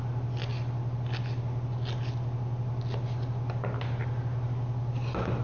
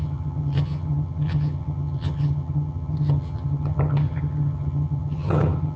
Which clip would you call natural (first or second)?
first